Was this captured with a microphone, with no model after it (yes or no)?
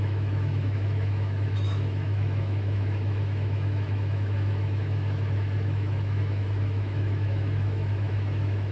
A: no